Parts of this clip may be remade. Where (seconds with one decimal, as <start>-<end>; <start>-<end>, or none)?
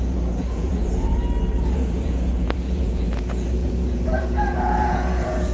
0.0-1.1; 1.7-5.5